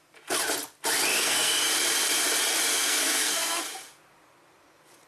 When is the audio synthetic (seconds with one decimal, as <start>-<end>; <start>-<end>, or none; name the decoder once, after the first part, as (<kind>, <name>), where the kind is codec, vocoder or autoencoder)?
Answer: 1.1-1.7 (codec, SNAC); 2.7-3.6